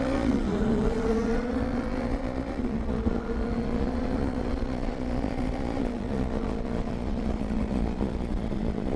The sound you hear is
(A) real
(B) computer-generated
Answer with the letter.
B